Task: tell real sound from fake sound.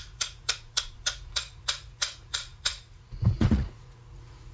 fake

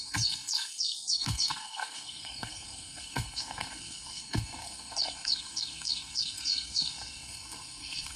fake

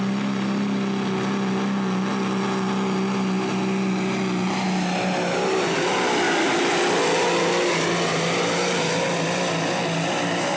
real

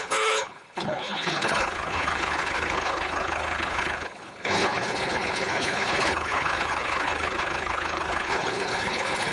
fake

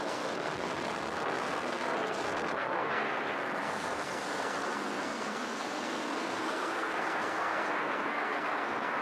fake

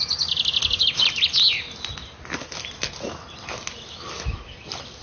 real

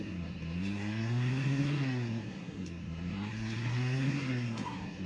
fake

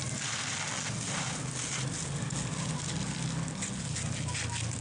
real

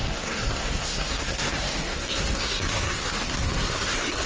fake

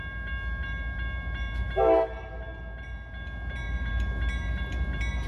real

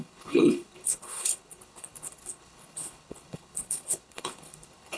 fake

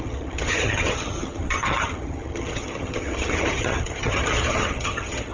fake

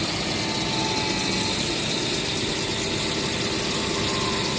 real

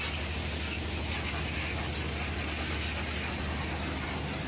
real